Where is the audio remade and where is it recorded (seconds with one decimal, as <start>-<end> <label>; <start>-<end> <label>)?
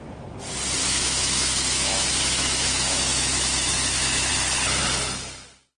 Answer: 0.0-0.8 recorded; 0.8-4.3 remade; 4.3-5.8 recorded